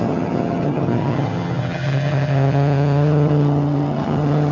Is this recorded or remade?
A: remade